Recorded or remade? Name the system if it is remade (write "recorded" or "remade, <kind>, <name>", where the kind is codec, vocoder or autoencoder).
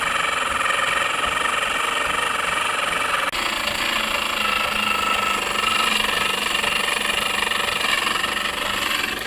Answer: recorded